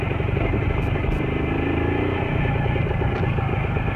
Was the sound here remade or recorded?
recorded